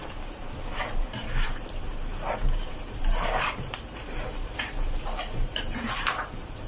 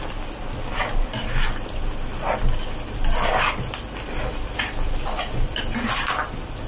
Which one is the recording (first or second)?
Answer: second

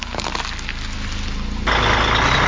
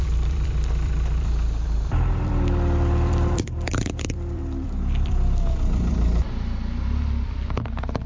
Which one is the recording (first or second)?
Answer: first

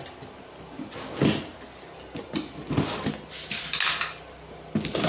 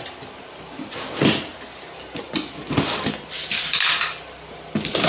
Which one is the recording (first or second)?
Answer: first